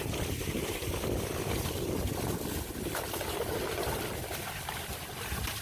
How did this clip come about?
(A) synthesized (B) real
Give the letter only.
A